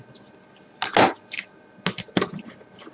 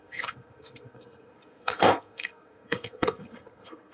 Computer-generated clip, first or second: second